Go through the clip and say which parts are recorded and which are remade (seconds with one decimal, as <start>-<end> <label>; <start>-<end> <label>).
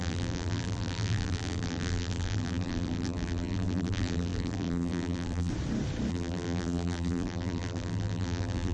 0.0-5.5 remade; 5.5-6.1 recorded; 6.1-8.7 remade